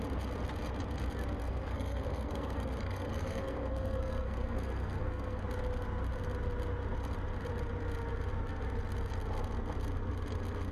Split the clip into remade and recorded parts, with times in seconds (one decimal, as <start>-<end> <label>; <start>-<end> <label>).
0.0-1.4 recorded; 1.4-5.4 remade; 5.4-10.7 recorded